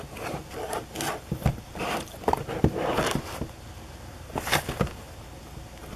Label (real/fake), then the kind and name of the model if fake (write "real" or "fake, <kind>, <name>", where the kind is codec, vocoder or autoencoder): real